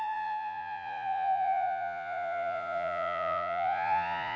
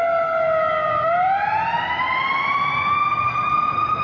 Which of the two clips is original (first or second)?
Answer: second